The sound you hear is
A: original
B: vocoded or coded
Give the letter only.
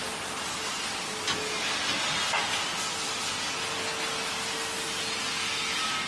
A